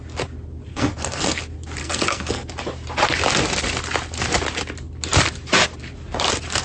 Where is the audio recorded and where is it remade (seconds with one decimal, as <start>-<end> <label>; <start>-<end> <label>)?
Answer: 0.0-0.7 recorded; 0.7-1.4 remade; 1.4-1.8 recorded; 1.8-2.5 remade; 2.5-6.6 recorded